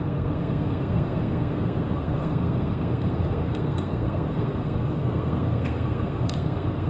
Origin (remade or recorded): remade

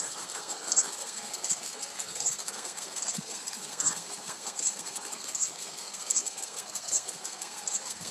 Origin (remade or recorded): remade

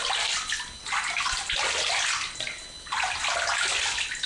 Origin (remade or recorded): recorded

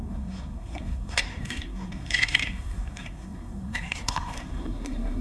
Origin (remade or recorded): remade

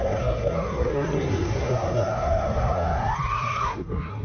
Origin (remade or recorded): remade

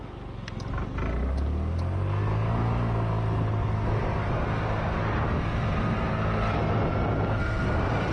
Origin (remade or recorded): recorded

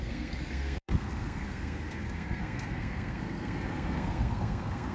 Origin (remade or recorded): remade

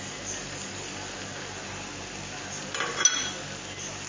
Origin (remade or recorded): recorded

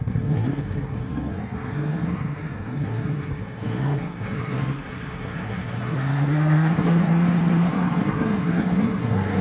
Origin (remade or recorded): remade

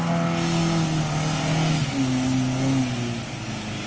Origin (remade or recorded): recorded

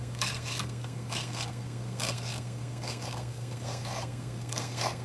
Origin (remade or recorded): remade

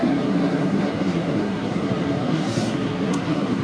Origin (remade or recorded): remade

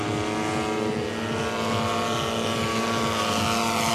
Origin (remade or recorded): recorded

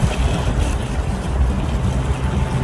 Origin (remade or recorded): recorded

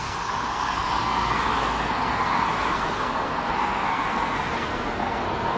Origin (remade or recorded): remade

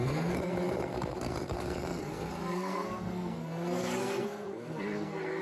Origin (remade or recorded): remade